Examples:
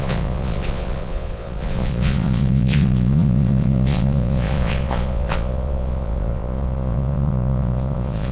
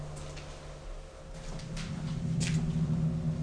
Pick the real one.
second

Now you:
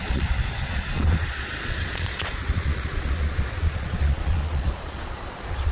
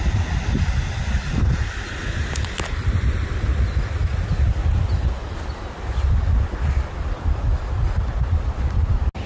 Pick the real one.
second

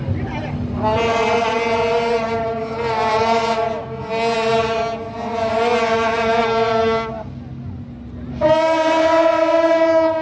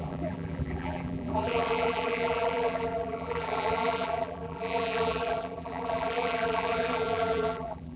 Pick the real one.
first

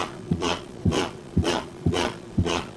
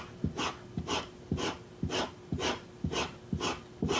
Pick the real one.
second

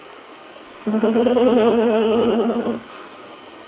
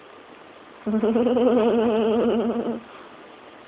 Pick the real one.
second